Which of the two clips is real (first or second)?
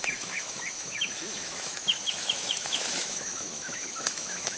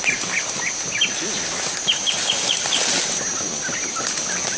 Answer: second